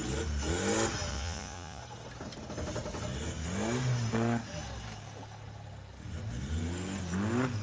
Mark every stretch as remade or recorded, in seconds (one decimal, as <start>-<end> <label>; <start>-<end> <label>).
0.0-1.1 recorded; 1.1-1.8 remade; 1.8-7.6 recorded

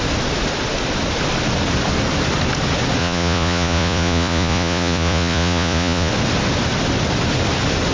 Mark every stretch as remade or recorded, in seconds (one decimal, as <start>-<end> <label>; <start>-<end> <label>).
0.0-3.0 recorded; 3.0-6.1 remade; 6.1-7.9 recorded

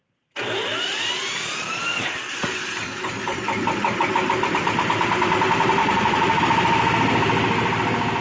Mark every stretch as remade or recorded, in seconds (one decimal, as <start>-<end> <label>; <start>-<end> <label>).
0.0-5.8 recorded; 5.8-6.4 remade; 6.4-8.2 recorded

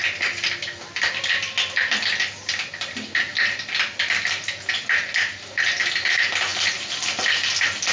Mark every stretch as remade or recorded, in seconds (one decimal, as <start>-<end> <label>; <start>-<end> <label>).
0.0-7.9 recorded